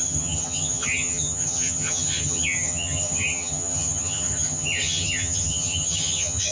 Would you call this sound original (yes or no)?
no